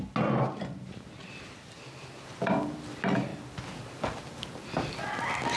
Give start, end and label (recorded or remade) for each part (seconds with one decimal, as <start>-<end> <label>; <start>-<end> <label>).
0.0-5.6 recorded